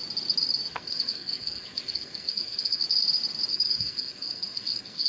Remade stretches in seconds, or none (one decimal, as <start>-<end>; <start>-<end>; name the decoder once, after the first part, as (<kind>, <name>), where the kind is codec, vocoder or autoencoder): 0.7-2.8 (codec, SNAC); 3.5-5.1